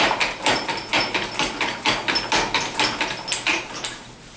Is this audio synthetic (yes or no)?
no